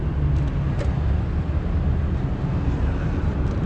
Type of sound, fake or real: real